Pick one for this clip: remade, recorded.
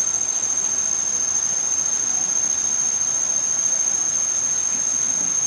recorded